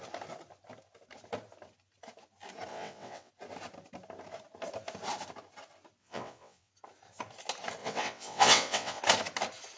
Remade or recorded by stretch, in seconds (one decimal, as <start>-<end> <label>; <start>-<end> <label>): 0.0-2.7 recorded; 2.7-3.3 remade; 3.3-6.0 recorded; 6.0-6.7 remade; 6.7-7.8 recorded; 7.8-9.0 remade; 9.0-9.8 recorded